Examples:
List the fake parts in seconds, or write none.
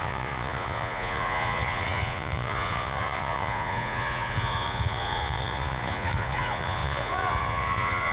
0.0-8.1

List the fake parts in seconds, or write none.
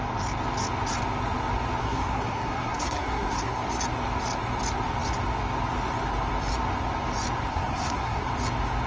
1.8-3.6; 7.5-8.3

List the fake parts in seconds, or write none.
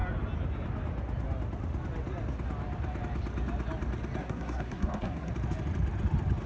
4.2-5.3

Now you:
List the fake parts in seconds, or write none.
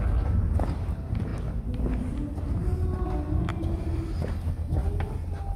3.5-4.1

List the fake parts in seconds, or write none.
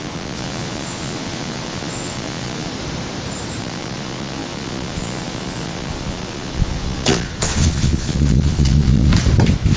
0.0-2.7; 3.6-9.1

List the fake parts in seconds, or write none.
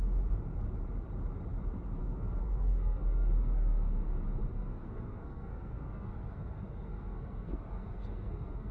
2.0-4.1; 4.5-8.7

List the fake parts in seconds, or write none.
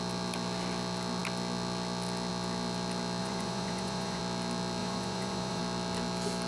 3.2-4.2; 4.8-5.6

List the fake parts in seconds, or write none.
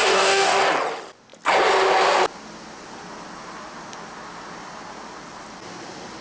0.0-0.6